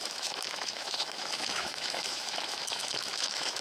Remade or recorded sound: remade